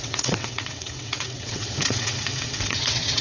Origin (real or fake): fake